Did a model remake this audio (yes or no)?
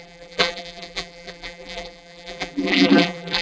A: yes